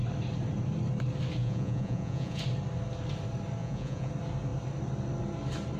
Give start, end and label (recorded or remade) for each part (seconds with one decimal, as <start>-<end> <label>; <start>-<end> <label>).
0.0-1.4 recorded; 1.4-2.4 remade; 2.4-3.6 recorded; 3.6-4.1 remade; 4.1-5.8 recorded